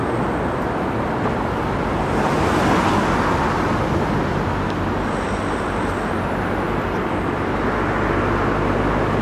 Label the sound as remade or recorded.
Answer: recorded